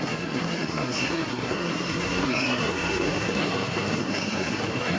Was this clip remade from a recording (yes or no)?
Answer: yes